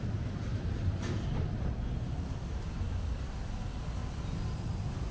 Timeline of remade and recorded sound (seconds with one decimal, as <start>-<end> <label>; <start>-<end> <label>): 0.0-0.5 recorded; 0.5-2.7 remade; 2.7-4.0 recorded; 4.0-5.1 remade

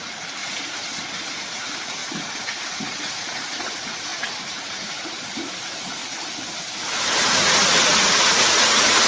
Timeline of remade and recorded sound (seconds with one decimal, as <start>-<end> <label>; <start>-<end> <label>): 0.0-2.0 remade; 2.0-2.8 recorded; 2.8-6.0 remade; 6.0-6.7 recorded; 6.7-9.1 remade

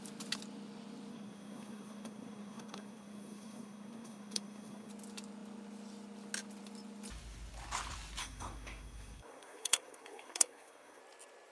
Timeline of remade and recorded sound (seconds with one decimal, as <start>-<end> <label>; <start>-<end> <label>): 0.0-1.1 recorded; 1.1-4.9 remade; 4.9-8.2 recorded; 8.2-11.0 remade; 11.0-11.5 recorded

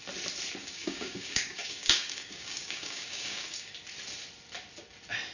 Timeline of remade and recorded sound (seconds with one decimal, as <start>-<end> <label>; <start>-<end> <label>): 0.0-0.6 recorded; 0.6-3.7 remade; 3.7-5.3 recorded

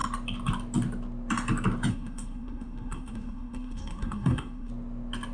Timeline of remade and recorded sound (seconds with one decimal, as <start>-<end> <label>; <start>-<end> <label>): 0.0-1.9 recorded; 1.9-4.7 remade; 4.7-5.3 recorded

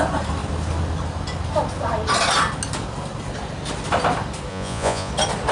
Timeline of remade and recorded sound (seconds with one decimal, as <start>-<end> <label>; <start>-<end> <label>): 0.0-4.5 recorded; 4.5-5.1 remade; 5.1-5.5 recorded

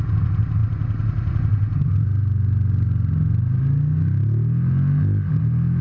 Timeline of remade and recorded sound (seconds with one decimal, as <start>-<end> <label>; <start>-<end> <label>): 0.0-5.8 recorded

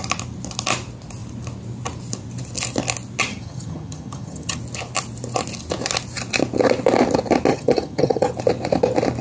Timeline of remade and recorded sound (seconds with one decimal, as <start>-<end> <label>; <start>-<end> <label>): 0.0-3.3 recorded; 3.3-4.6 remade; 4.6-7.5 recorded; 7.5-8.3 remade; 8.3-9.2 recorded